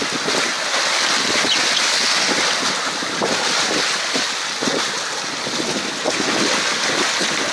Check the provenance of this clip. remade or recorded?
recorded